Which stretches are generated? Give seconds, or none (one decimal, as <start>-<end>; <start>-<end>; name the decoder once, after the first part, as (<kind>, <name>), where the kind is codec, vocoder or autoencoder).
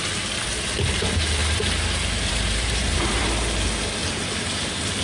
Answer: 1.4-3.2 (vocoder, BigVGAN v2); 4.0-4.6